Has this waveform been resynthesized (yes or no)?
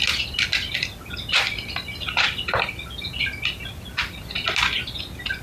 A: no